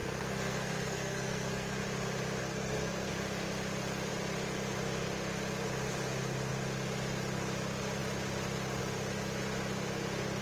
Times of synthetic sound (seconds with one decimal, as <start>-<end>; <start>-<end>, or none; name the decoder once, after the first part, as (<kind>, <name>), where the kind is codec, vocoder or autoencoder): 0.0-1.8 (codec, SNAC); 2.4-3.1